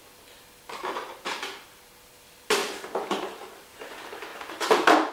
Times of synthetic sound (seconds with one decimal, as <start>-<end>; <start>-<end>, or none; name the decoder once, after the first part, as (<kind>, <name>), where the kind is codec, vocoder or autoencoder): 0.8-1.6 (vocoder, BigVGAN v2); 2.6-3.6; 4.3-5.1